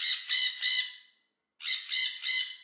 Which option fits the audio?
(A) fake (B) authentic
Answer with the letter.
B